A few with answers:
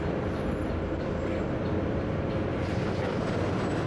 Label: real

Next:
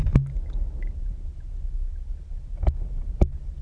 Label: real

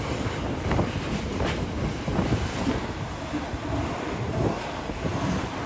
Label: real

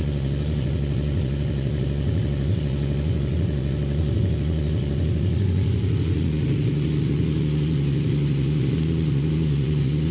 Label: fake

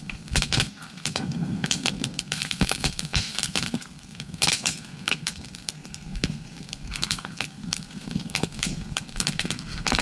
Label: fake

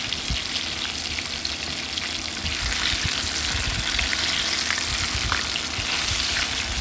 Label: real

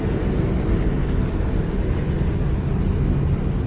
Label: real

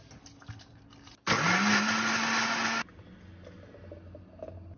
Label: real